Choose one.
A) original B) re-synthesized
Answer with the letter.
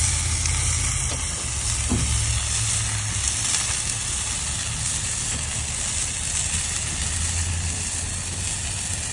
A